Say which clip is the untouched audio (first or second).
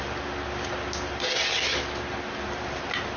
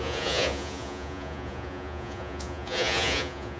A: first